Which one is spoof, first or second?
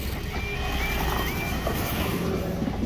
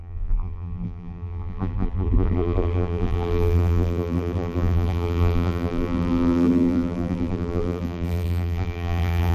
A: second